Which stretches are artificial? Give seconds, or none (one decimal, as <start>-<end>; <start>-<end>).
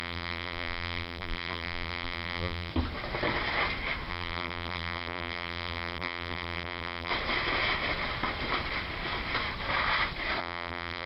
0.0-2.7; 4.1-7.1; 10.4-11.1